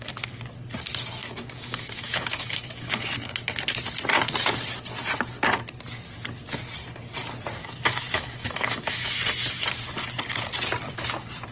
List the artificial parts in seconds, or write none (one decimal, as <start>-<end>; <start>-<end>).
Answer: 1.2-3.1; 7.6-9.1